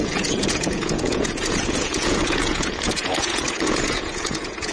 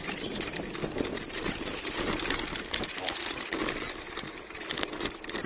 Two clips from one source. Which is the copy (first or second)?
first